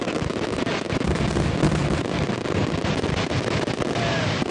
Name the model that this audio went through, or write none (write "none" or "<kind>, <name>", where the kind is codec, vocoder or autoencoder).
none